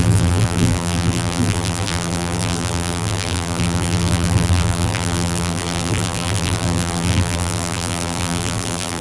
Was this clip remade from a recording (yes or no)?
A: yes